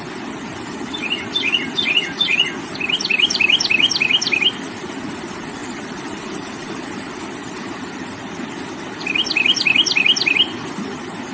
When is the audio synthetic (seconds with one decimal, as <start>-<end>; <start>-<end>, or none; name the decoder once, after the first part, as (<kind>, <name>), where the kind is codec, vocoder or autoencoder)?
5.6-7.1 (vocoder, BigVGAN v2)